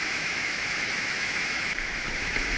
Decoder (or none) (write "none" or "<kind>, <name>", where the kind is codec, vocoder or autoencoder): autoencoder, DAC-VAE